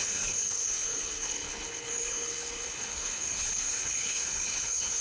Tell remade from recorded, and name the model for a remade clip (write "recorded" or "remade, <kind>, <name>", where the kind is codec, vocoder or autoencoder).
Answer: remade, codec, HILCodec